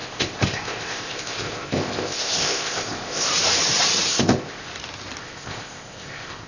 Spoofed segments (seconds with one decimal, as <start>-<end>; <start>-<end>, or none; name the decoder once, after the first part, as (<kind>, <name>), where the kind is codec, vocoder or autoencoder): 0.0-3.3 (codec, ZipCodec); 4.1-4.7; 5.2-6.5